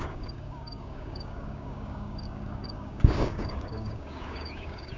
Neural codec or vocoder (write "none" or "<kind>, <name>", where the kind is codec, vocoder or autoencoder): codec, DAC